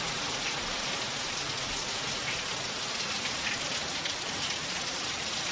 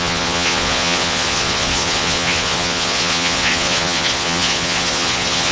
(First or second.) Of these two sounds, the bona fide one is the first